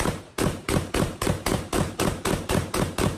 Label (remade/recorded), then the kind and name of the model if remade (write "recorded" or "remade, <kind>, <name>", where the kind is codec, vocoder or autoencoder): remade, vocoder, BigVGAN v2